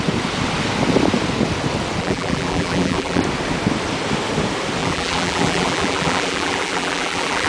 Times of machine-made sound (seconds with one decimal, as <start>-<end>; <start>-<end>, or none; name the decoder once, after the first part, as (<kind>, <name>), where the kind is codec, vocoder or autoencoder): 2.0-3.2 (vocoder, BigVGAN v2); 4.8-7.5